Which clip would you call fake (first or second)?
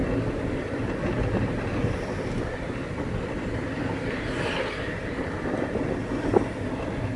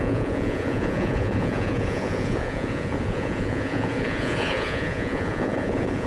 second